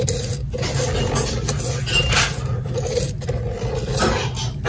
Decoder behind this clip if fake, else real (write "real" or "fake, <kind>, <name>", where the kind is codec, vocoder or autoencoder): real